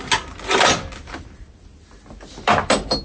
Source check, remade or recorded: recorded